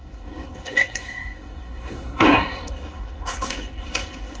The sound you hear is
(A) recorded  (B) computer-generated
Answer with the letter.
B